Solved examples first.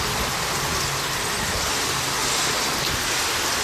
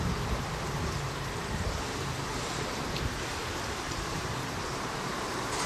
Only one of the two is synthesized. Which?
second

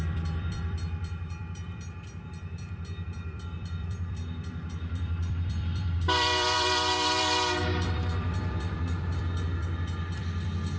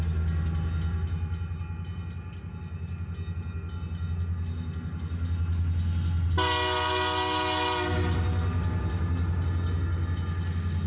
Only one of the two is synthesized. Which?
first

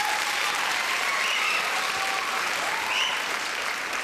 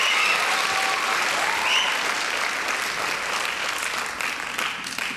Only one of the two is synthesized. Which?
first